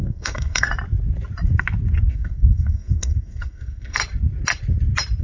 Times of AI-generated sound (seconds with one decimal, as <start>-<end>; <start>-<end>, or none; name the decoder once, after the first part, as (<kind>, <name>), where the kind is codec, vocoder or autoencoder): 0.0-0.7 (codec, SNAC); 2.1-4.0